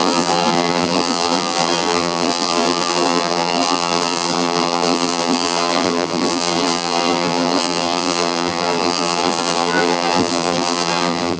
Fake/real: fake